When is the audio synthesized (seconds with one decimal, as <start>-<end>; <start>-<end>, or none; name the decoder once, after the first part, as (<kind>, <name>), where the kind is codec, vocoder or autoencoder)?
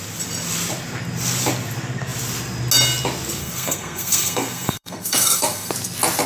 3.4-5.7 (codec, SNAC)